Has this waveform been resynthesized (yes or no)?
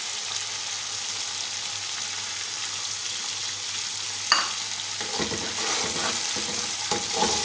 no